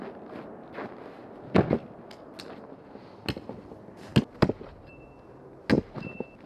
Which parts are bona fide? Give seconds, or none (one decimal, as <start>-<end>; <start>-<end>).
0.0-6.5